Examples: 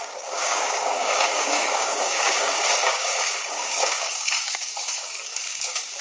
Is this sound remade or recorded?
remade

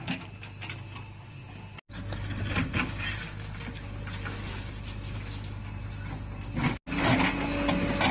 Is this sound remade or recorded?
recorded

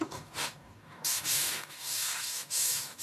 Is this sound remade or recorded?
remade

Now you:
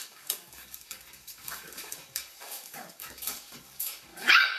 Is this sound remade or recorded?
remade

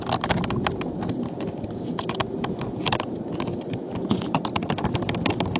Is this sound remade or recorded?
recorded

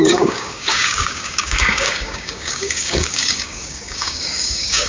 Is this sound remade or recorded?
remade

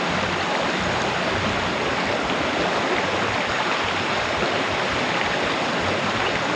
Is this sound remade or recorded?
recorded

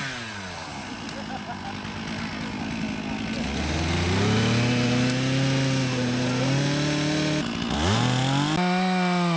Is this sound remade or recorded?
recorded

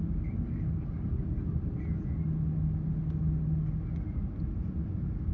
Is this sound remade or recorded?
recorded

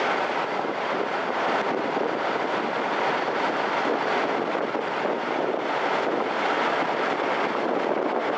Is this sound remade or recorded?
recorded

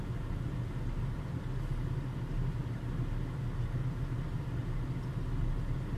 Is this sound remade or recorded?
recorded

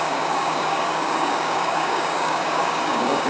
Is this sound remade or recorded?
remade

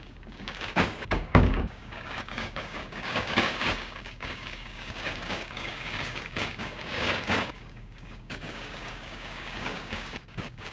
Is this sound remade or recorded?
remade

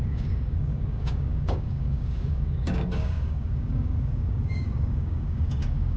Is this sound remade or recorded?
remade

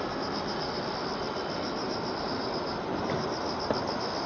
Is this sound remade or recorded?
recorded